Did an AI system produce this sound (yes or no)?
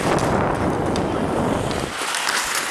no